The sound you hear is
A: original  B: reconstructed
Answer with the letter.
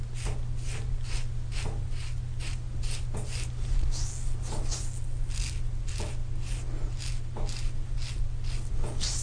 A